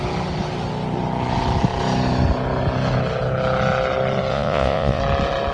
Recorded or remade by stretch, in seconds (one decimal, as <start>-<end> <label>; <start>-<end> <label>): 0.0-4.3 recorded; 4.3-5.0 remade; 5.0-5.5 recorded